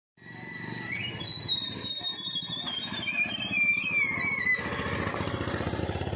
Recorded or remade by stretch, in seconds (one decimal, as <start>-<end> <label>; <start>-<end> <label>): 0.0-2.1 remade; 2.1-5.8 recorded; 5.8-6.2 remade